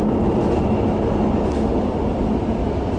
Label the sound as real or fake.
real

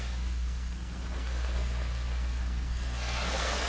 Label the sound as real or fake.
fake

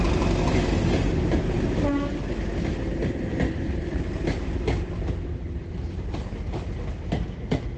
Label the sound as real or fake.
real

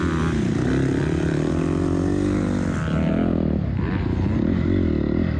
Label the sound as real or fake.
real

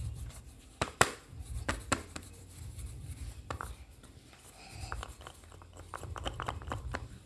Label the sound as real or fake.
fake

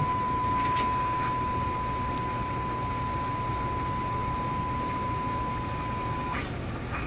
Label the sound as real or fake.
real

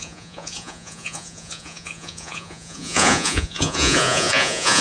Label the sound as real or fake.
fake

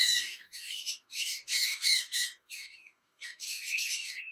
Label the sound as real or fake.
fake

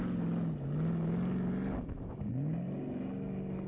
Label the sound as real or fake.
real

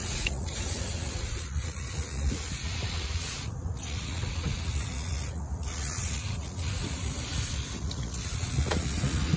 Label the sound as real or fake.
fake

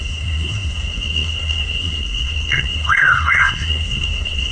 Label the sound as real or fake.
fake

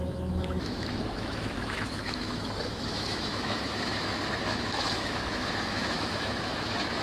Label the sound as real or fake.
fake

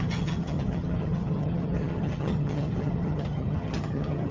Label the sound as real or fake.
fake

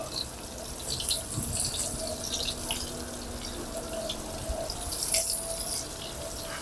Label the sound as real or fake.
real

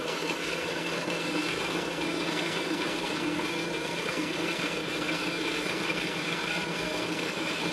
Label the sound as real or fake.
fake